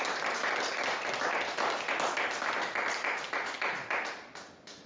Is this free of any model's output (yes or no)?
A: yes